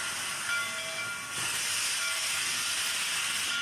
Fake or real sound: real